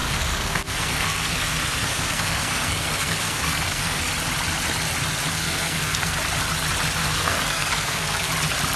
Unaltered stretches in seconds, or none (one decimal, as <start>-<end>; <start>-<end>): 4.0-5.3; 6.2-7.0; 8.3-8.8